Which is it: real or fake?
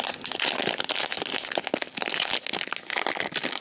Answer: real